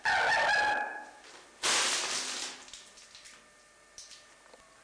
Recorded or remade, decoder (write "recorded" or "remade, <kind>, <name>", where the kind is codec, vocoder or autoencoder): recorded